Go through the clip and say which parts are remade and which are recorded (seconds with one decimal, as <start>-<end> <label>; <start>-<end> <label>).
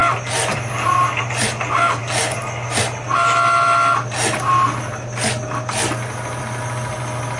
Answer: 0.0-7.4 recorded